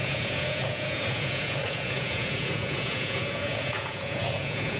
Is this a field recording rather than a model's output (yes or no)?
no